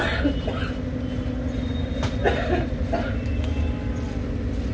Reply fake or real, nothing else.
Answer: real